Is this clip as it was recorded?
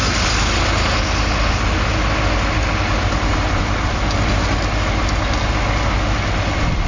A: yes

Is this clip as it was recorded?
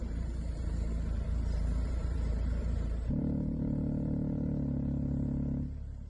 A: no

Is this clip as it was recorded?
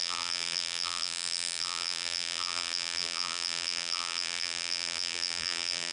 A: no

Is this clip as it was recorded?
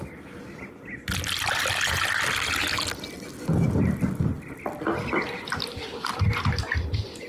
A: yes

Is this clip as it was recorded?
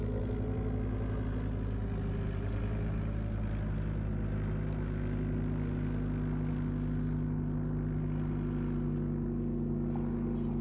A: yes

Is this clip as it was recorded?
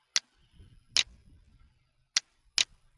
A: yes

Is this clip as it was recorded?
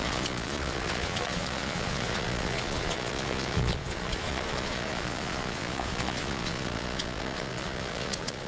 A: no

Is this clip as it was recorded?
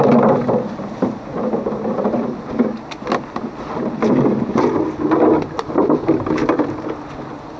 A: yes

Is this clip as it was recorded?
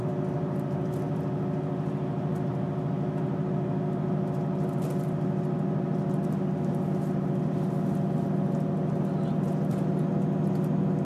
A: yes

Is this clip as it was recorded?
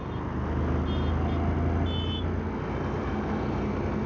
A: yes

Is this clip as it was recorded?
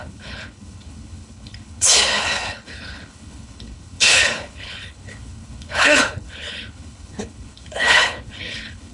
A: no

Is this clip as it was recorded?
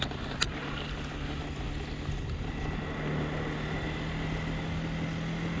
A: yes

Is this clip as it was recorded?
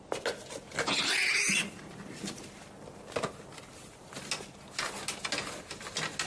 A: yes